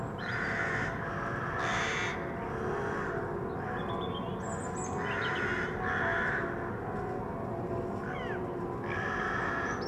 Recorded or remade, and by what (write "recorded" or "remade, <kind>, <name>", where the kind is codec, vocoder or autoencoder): recorded